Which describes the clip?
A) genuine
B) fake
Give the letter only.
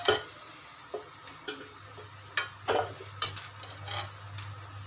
A